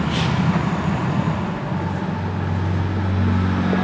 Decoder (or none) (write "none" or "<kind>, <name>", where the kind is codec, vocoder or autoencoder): none